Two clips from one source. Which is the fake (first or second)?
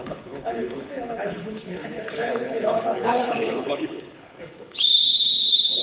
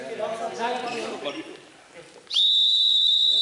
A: first